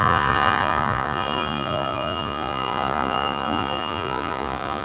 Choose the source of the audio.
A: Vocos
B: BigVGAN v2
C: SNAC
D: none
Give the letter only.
A